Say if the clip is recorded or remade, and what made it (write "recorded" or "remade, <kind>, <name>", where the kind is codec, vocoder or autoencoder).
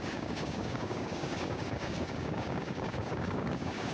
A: remade, codec, DAC